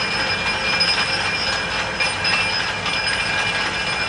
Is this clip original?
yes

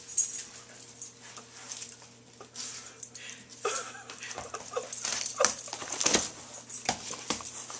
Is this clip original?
yes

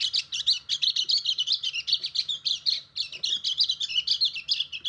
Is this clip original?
yes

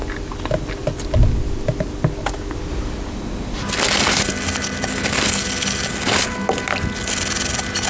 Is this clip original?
yes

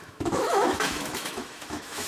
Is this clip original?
no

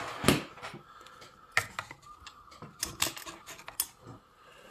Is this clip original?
yes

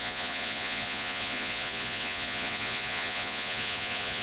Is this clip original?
no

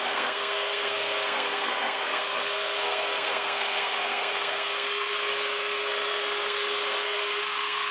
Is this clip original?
no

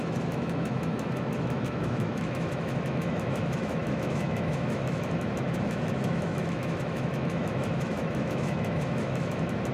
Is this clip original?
no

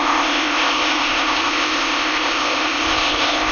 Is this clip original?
no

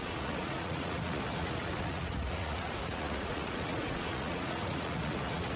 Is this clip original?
no